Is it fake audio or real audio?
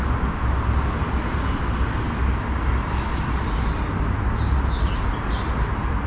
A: real